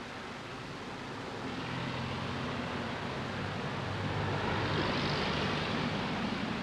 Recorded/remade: recorded